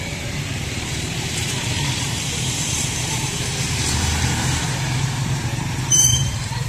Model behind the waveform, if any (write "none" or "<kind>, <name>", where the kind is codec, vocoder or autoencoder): vocoder, BigVGAN v2